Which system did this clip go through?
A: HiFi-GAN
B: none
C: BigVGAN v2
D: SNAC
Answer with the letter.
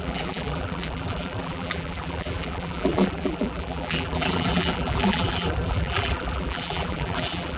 C